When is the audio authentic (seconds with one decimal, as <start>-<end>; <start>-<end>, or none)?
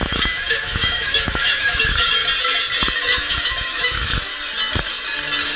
2.2-3.0; 4.3-5.6